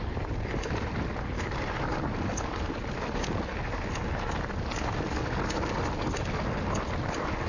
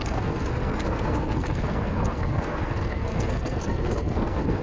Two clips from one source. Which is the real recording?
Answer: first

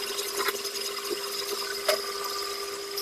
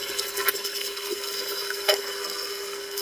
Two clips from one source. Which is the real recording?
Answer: first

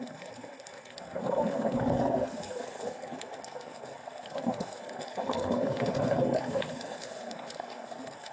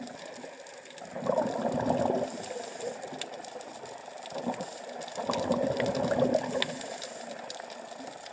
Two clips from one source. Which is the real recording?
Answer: second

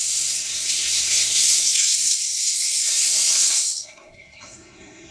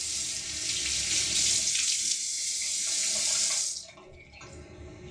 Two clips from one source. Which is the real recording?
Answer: second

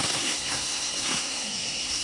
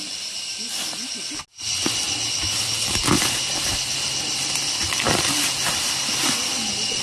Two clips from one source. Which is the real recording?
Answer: second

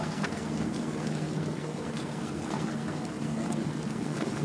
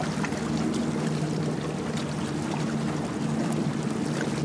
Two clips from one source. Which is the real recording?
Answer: second